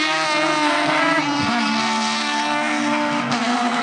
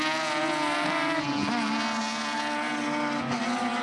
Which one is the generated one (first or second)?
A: first